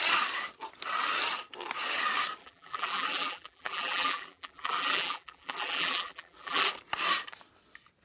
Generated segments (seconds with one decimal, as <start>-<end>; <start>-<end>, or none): 2.4-6.7